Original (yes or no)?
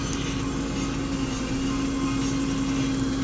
yes